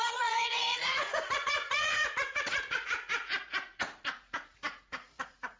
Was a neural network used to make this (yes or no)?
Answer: yes